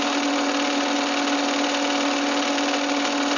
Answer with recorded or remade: recorded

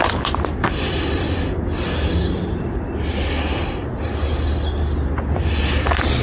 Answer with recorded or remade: recorded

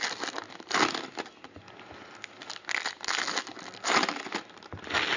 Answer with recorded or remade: recorded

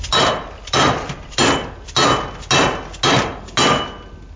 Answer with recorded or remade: recorded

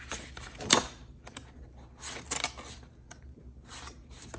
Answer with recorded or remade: recorded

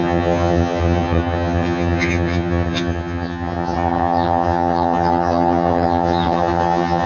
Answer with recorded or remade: remade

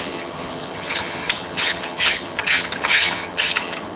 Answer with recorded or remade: remade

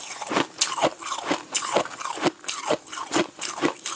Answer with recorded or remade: recorded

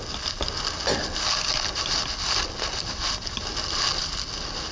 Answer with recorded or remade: recorded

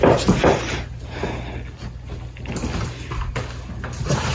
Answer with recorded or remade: recorded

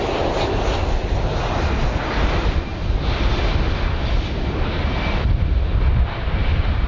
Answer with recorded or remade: recorded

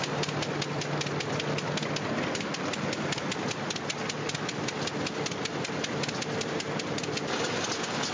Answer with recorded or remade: recorded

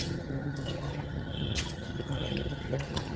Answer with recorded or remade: remade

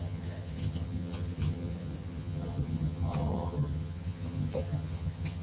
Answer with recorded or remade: remade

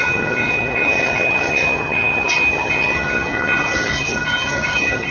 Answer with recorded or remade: remade